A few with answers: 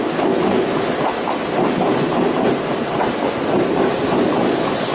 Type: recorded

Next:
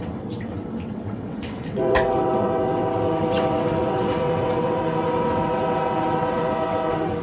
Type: remade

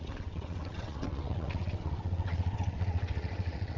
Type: remade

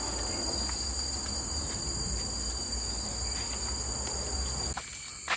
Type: recorded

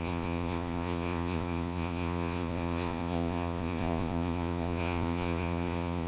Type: remade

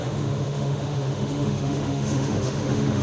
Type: remade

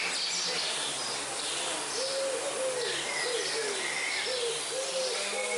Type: recorded